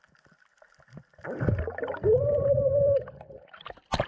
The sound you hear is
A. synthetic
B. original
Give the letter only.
B